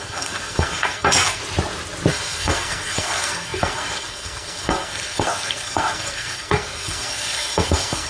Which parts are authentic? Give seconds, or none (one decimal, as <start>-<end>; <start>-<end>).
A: 1.4-2.1